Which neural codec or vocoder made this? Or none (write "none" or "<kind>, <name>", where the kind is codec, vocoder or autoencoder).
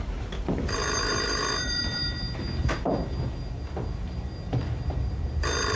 vocoder, BigVGAN v2